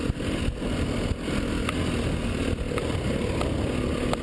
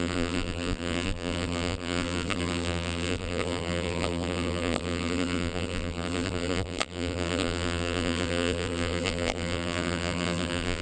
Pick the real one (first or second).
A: first